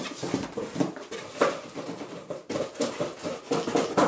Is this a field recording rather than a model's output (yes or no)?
yes